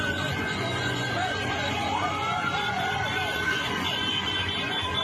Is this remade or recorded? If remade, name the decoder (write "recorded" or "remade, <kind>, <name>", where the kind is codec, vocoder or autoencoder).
remade, vocoder, Vocos